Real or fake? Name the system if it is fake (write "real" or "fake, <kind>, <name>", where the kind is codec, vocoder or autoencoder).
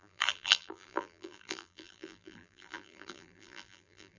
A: fake, vocoder, BigVGAN v2